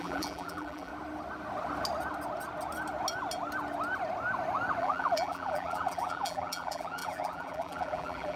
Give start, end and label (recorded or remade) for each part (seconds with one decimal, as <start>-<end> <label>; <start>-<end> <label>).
0.0-0.9 remade; 0.9-4.8 recorded; 4.8-8.4 remade